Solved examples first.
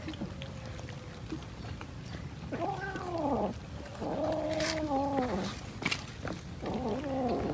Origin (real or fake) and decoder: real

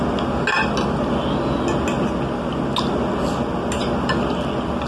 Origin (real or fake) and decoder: real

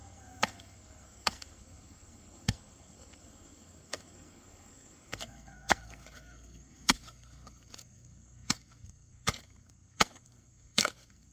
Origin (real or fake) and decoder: fake, codec, SNAC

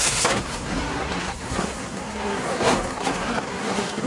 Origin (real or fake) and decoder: fake, codec, SNAC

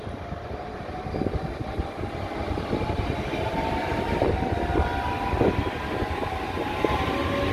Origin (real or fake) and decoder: real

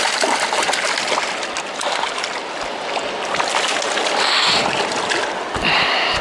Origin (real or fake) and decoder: real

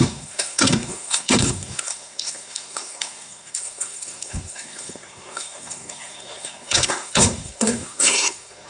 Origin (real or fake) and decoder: fake, codec, SNAC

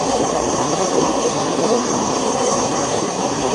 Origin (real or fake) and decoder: fake, codec, SNAC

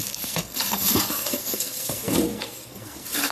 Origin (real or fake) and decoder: fake, codec, SNAC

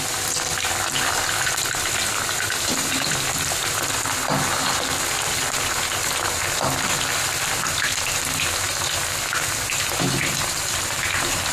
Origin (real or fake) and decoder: real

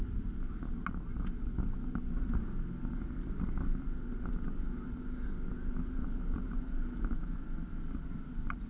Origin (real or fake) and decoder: real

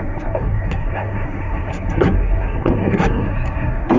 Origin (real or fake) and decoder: fake, codec, SNAC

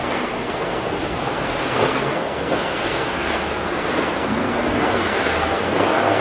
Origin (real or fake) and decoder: fake, codec, SNAC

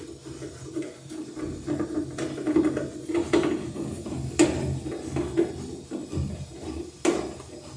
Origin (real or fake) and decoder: real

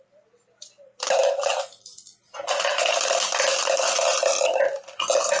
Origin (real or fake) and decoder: real